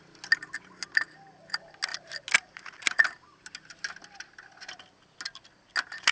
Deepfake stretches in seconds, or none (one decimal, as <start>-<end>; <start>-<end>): none